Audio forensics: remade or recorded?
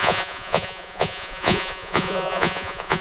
remade